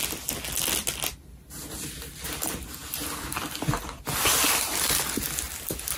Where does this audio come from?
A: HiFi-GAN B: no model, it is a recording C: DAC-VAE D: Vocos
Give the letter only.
B